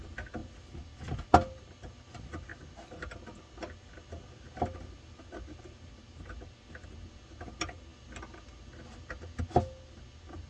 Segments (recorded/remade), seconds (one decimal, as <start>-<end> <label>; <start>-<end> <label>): 0.0-10.5 recorded